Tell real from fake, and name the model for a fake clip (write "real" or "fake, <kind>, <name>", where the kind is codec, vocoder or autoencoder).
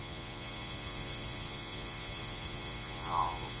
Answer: fake, vocoder, Vocos